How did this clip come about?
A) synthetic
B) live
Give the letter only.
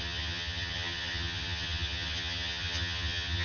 A